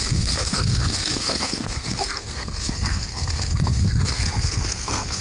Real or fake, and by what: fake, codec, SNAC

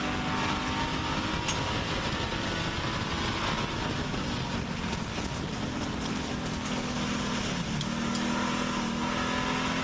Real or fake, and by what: real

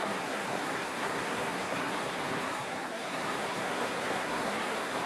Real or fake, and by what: fake, codec, SNAC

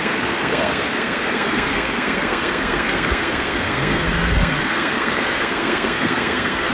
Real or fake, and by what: fake, codec, SNAC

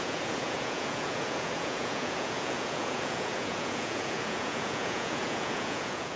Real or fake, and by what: fake, vocoder, Vocos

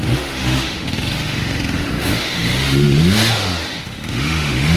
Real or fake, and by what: fake, autoencoder, DAC-VAE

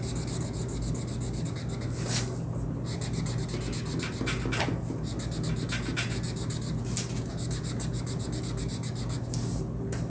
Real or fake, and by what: real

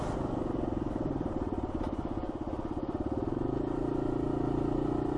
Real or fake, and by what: real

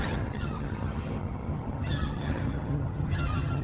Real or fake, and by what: fake, vocoder, HiFi-GAN